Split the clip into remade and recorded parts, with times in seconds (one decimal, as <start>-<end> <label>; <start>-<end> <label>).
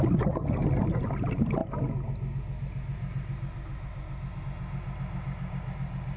0.0-6.2 recorded